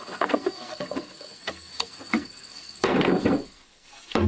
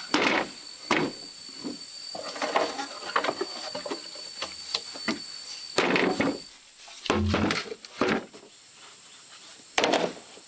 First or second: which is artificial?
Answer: first